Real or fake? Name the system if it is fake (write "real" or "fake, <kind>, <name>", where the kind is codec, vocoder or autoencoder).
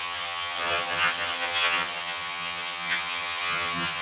fake, vocoder, HiFi-GAN